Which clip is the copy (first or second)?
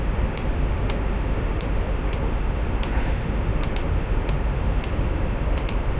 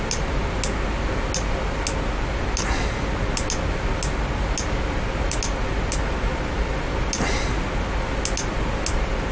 first